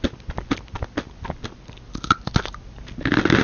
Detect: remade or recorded recorded